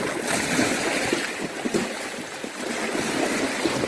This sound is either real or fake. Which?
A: real